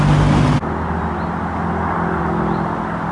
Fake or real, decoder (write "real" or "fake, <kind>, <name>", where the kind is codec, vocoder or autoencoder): real